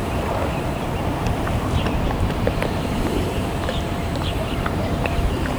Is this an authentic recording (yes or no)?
no